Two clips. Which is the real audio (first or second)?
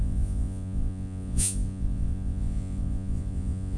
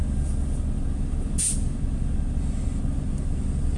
second